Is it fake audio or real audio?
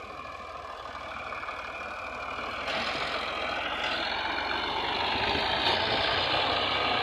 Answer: real